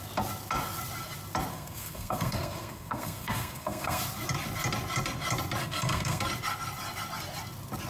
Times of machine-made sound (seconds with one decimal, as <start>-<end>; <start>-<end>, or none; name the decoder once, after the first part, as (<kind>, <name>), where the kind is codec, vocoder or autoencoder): 1.5-4.0 (codec, SNAC); 5.6-6.2